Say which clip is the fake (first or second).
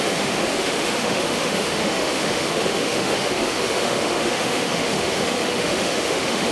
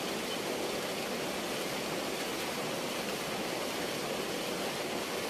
first